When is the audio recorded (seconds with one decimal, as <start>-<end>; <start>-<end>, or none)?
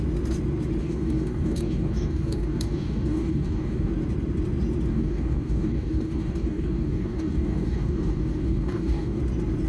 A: 0.0-0.8; 3.9-4.9; 9.2-9.7